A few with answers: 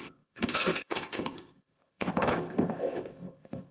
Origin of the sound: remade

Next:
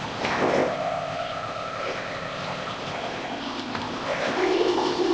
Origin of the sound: remade